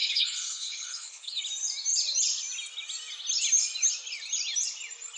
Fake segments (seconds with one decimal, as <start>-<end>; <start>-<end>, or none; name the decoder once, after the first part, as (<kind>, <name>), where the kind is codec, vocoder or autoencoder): 0.0-1.4 (codec, HILCodec)